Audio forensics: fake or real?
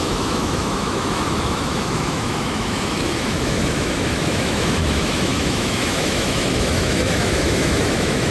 fake